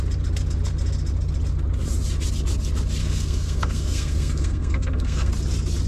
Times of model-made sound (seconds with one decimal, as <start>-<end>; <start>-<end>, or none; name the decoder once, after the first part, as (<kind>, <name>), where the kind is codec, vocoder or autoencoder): 3.0-5.3 (codec, SNAC)